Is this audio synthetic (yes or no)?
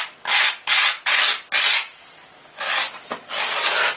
no